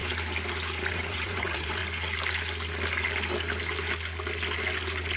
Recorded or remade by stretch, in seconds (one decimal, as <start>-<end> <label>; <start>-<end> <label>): 0.0-0.9 recorded; 0.9-1.8 remade; 1.8-5.2 recorded